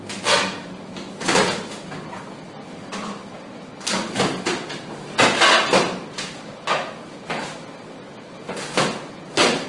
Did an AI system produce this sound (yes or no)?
no